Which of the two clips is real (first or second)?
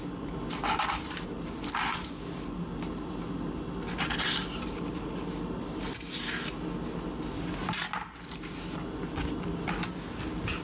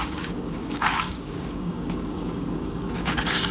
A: first